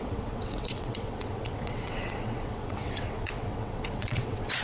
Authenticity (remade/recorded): remade